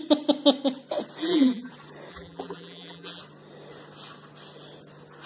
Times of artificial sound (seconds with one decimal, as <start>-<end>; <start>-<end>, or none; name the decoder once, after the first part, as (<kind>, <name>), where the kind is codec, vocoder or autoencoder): 1.2-1.7 (vocoder, BigVGAN v2); 2.1-3.2